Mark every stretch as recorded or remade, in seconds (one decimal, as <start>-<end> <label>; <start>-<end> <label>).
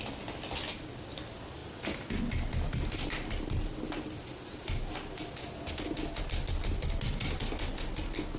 0.0-8.4 recorded